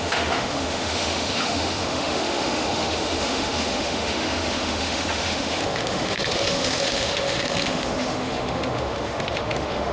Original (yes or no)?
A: no